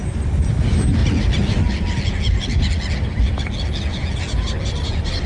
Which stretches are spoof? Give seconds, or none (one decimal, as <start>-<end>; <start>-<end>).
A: none